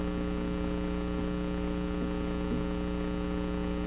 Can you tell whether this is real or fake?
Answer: real